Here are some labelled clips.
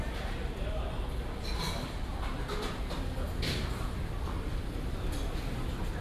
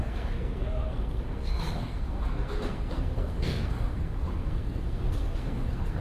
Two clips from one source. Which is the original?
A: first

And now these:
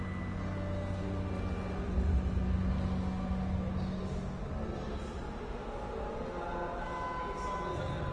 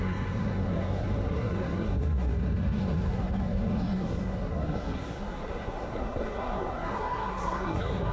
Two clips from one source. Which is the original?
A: first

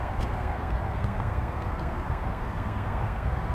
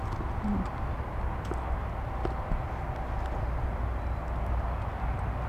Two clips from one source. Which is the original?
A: second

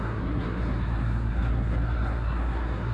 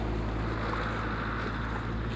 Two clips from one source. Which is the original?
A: second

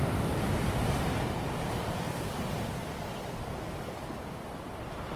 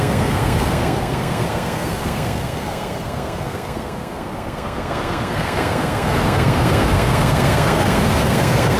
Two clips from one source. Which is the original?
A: first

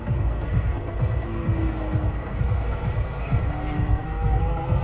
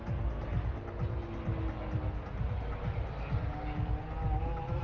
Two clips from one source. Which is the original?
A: second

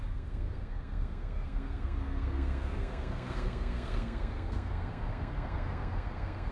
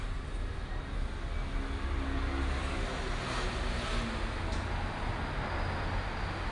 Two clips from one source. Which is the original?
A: second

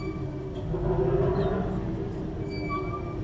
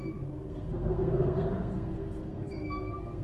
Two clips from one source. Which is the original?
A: first